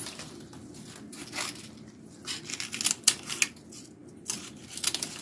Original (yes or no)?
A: yes